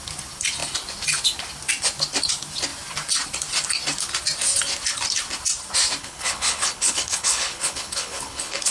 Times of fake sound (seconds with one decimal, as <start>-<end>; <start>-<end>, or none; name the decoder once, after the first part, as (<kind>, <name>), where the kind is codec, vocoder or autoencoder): 6.0-8.7 (codec, HILCodec)